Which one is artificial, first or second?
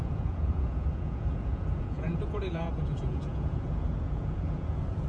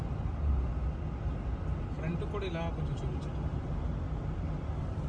first